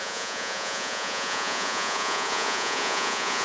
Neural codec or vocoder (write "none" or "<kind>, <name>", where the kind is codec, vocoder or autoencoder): vocoder, Vocos